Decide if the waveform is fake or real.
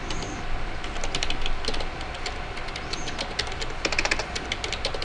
real